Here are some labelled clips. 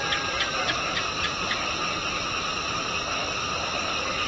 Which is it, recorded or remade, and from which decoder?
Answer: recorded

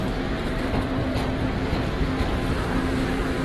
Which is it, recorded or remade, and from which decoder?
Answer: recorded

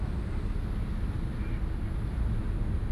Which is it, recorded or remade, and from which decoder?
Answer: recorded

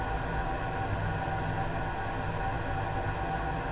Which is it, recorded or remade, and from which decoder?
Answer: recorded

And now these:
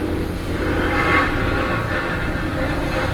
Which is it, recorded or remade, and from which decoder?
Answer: recorded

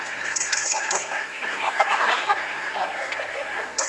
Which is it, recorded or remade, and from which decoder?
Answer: remade, codec, SNAC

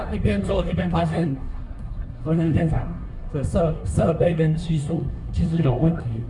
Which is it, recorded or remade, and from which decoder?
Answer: remade, codec, SNAC